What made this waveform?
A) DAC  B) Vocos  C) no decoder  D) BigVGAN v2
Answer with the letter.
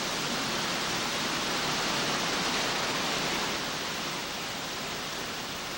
C